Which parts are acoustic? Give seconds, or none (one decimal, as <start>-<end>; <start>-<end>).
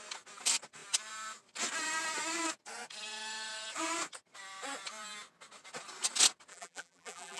0.0-6.5